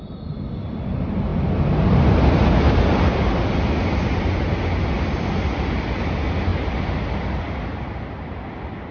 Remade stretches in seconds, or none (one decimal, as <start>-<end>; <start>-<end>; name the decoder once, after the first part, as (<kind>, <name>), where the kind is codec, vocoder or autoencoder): none